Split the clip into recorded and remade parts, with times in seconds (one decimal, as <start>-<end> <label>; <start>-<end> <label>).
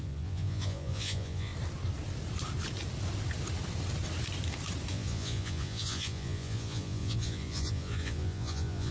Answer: 0.0-1.5 remade; 1.5-4.9 recorded; 4.9-8.9 remade